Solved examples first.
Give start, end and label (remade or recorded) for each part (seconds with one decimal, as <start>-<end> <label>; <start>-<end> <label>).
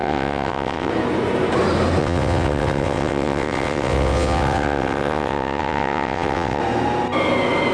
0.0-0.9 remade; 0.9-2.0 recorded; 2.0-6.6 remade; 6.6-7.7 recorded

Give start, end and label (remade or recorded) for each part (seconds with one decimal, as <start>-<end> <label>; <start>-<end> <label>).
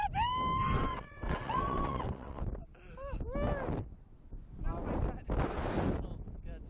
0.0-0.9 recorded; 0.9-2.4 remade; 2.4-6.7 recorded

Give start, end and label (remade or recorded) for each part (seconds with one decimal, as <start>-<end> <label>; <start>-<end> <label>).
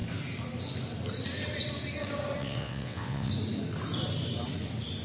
0.0-2.4 recorded; 2.4-3.3 remade; 3.3-5.0 recorded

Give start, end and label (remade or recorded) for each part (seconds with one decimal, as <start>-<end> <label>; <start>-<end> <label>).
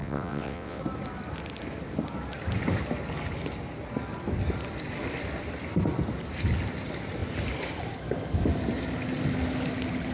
0.0-0.8 remade; 0.8-10.1 recorded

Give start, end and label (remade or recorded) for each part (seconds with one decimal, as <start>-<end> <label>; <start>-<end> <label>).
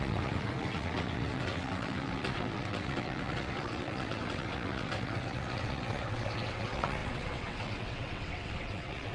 0.0-9.1 remade